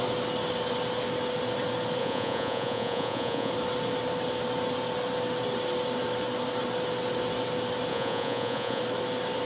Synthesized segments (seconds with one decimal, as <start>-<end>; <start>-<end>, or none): 2.0-3.5; 7.9-8.8